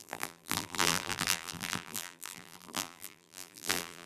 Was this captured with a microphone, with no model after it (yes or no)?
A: no